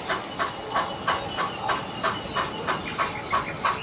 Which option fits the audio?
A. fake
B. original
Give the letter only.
B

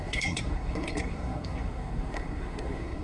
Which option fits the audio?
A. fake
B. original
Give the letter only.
A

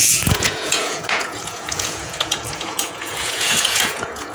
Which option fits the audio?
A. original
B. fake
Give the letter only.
B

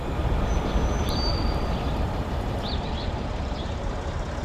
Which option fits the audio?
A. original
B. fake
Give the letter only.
B